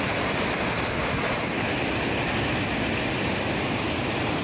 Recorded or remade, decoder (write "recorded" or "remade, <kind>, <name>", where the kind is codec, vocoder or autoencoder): recorded